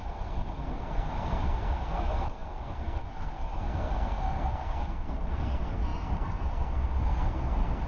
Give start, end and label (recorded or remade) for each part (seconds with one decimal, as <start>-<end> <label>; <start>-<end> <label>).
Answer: 0.0-7.9 remade